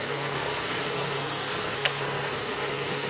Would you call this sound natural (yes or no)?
no